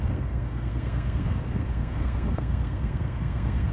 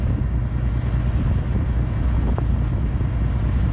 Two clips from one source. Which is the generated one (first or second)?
first